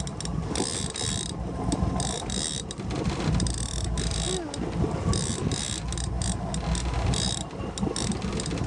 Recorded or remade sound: recorded